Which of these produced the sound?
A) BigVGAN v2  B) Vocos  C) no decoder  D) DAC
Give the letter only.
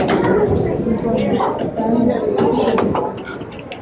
C